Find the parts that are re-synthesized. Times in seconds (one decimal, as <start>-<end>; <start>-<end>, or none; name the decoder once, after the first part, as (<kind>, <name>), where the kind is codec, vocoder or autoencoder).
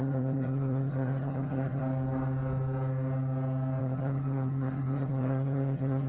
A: 0.0-1.8 (vocoder, HiFi-GAN); 3.8-6.1